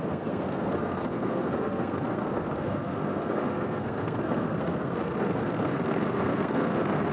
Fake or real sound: fake